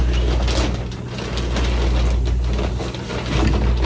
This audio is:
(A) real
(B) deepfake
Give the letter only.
A